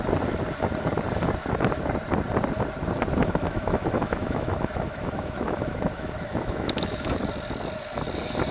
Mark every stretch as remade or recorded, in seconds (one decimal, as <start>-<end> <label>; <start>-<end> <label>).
0.0-3.2 recorded; 3.2-7.2 remade; 7.2-8.5 recorded